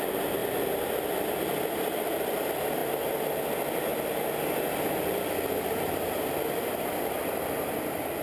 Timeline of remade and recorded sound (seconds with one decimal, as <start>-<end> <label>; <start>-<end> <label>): 0.0-0.4 remade; 0.4-1.6 recorded; 1.6-8.2 remade